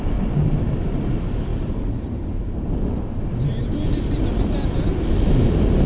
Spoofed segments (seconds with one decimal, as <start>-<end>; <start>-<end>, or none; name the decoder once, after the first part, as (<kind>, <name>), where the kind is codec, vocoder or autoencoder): none